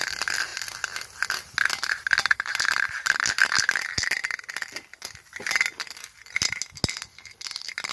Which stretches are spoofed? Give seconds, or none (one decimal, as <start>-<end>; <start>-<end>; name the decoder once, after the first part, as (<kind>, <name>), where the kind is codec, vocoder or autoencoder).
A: none